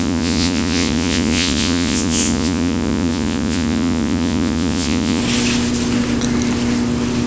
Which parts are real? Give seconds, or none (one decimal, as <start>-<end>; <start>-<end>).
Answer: 5.2-7.3